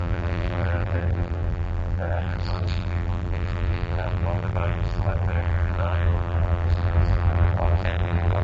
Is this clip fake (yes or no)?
yes